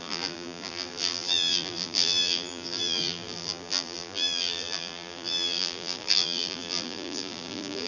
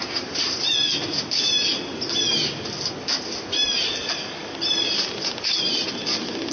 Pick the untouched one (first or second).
second